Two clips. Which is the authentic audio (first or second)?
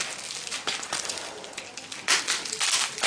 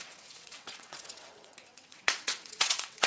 first